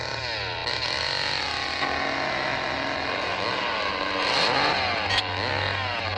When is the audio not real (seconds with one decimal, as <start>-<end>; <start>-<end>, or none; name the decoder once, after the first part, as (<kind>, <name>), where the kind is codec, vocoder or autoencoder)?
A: none

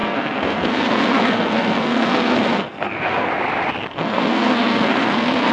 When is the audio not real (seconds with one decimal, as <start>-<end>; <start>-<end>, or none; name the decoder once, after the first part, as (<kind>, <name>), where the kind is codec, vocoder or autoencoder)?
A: 0.0-3.3 (codec, SNAC); 3.9-5.5

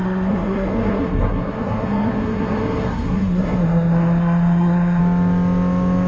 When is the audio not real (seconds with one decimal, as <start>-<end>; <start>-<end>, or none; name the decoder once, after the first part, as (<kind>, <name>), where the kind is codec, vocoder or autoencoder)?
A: 0.0-5.0 (codec, SNAC)

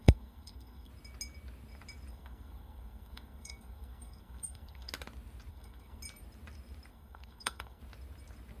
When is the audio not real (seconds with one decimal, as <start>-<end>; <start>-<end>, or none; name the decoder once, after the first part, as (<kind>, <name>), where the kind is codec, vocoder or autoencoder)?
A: 0.0-0.9 (codec, SNAC); 2.1-4.9; 5.5-6.0; 6.9-7.8

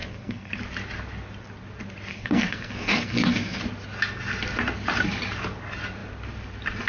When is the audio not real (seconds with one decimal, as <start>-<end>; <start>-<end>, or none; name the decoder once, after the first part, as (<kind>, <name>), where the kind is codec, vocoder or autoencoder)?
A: 0.0-0.5 (codec, SNAC); 2.1-3.6

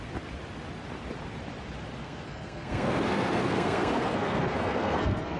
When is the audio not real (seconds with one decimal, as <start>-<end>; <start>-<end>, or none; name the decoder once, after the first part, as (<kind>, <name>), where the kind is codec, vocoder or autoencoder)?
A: 2.0-5.4 (codec, SNAC)

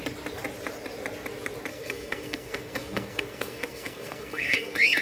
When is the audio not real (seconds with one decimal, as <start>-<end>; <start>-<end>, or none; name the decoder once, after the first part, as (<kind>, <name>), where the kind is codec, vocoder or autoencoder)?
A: 1.7-5.0 (codec, SNAC)